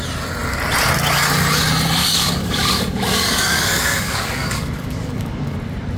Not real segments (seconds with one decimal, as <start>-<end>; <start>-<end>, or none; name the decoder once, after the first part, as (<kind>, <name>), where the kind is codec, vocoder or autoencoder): 2.0-5.6 (codec, DAC)